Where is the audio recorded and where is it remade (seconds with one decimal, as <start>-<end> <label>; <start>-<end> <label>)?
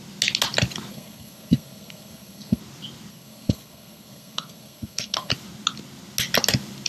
0.0-0.9 recorded; 0.9-2.6 remade; 2.6-3.1 recorded; 3.1-5.3 remade; 5.3-6.9 recorded